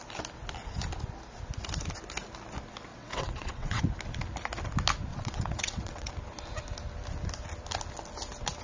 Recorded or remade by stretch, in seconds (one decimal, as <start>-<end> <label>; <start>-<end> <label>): 0.0-2.9 recorded; 2.9-3.8 remade; 3.8-5.1 recorded; 5.1-6.1 remade; 6.1-8.6 recorded